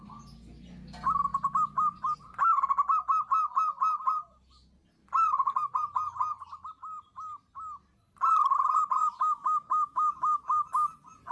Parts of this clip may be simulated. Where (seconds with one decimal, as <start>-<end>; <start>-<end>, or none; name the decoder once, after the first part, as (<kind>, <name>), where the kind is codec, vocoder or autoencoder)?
9.0-10.7 (autoencoder, DAC-VAE)